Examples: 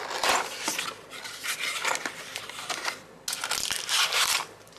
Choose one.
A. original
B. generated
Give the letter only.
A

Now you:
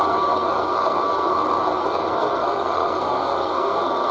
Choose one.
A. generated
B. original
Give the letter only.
A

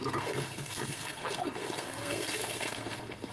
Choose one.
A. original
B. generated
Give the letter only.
B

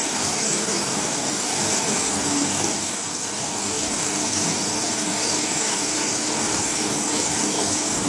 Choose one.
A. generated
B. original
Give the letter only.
A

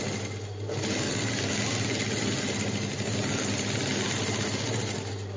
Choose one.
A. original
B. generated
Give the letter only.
A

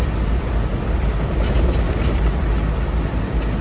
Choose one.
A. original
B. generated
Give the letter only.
B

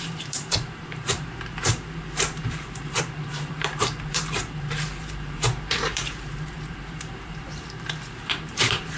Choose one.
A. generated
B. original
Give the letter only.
A